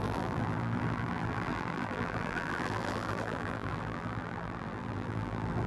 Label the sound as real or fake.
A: fake